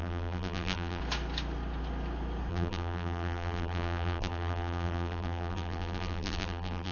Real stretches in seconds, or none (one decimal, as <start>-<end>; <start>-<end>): 1.0-2.5